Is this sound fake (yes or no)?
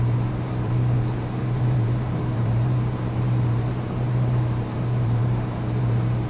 yes